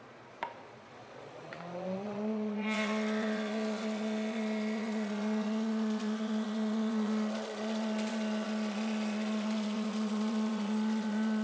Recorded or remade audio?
remade